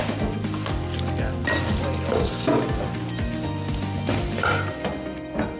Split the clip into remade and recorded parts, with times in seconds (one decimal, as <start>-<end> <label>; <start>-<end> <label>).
0.0-1.4 recorded; 1.4-4.8 remade; 4.8-5.6 recorded